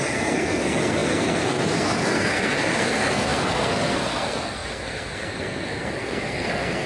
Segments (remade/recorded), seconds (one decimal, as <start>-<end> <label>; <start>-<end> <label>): 0.0-6.9 remade